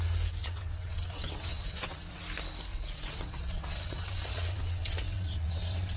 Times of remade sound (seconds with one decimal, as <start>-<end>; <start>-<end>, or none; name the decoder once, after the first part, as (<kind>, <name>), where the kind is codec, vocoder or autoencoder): 0.4-2.2 (vocoder, WaveNeXt); 2.7-6.0